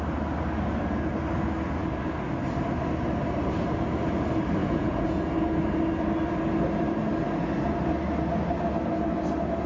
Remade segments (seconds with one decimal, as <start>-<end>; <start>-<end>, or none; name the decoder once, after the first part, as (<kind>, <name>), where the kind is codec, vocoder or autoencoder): 4.6-5.2 (vocoder, Vocos)